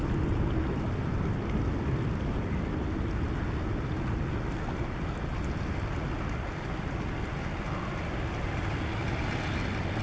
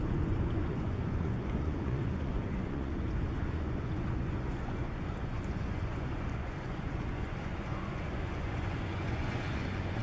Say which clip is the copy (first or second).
second